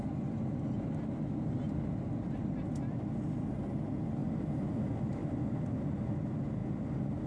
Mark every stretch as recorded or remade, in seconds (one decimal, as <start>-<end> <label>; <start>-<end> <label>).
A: 0.0-7.3 recorded